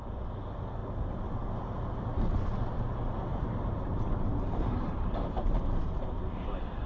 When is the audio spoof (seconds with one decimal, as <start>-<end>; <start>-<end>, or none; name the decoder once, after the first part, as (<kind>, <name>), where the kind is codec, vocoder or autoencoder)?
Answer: 0.8-1.5 (vocoder, BigVGAN v2); 3.3-5.8